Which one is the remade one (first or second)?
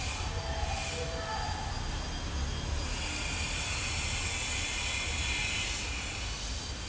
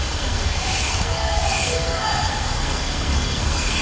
second